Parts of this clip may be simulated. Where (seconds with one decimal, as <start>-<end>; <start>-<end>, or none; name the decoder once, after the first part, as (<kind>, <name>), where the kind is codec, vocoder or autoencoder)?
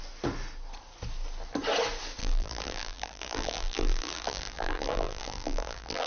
2.2-6.1 (vocoder, BigVGAN v2)